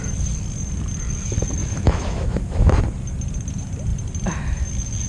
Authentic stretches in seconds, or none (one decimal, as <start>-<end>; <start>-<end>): 0.0-1.6; 2.7-5.1